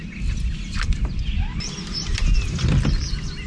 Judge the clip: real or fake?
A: real